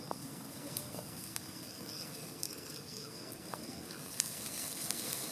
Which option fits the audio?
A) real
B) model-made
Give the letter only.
B